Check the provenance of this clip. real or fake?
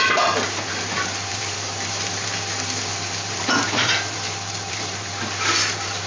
fake